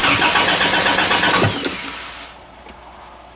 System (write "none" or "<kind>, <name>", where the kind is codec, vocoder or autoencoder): none